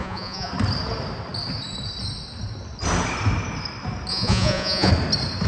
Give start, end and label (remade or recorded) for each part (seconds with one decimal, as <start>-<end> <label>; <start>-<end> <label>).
0.0-0.5 remade; 0.5-4.1 recorded; 4.1-4.9 remade; 4.9-5.5 recorded